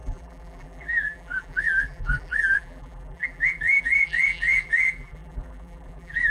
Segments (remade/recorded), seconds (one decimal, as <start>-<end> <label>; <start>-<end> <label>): 0.0-6.3 remade